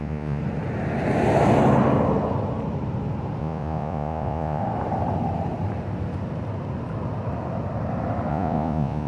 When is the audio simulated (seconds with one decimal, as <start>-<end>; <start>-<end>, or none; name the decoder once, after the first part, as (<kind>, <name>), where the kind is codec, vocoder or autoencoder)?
0.0-0.4 (vocoder, Vocos); 3.4-4.6; 8.3-9.1